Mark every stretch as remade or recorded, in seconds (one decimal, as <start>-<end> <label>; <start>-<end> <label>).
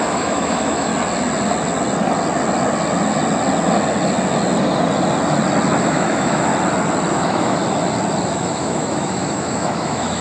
0.0-0.9 remade; 0.9-5.8 recorded; 5.8-6.5 remade; 6.5-7.1 recorded; 7.1-7.6 remade; 7.6-8.3 recorded; 8.3-10.2 remade